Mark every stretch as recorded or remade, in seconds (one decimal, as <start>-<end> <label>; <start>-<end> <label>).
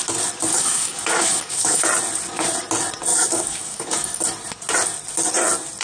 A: 0.0-0.5 recorded; 0.5-1.8 remade; 1.8-3.1 recorded; 3.1-4.2 remade; 4.2-5.8 recorded